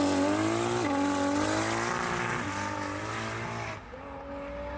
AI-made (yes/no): no